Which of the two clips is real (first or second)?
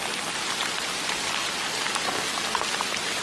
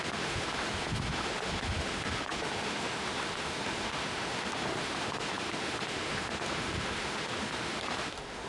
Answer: first